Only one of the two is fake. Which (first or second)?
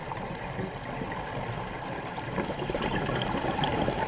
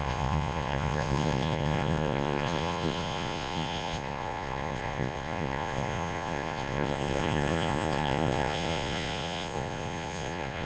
second